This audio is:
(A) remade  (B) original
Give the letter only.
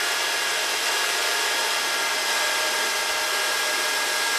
B